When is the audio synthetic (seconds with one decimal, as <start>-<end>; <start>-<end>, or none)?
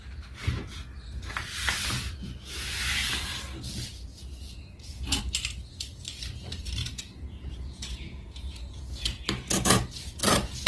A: 4.1-5.2; 6.8-10.7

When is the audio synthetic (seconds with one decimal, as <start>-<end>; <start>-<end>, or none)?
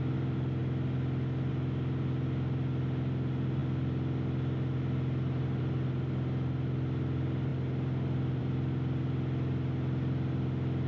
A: none